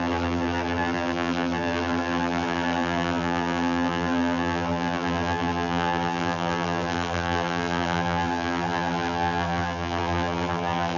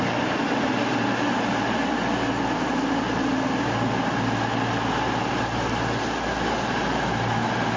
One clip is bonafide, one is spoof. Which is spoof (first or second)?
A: first